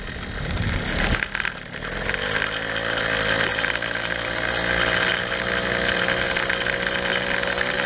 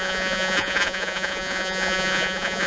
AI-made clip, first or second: second